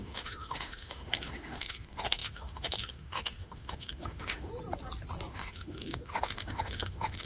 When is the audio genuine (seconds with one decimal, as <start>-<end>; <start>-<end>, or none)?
4.5-5.3